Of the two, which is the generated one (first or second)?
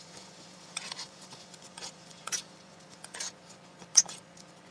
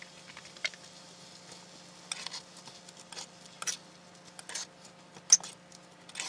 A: first